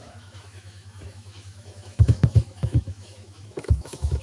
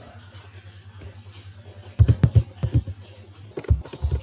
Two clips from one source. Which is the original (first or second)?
second